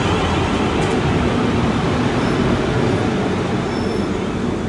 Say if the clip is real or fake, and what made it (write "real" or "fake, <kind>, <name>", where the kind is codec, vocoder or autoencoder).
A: real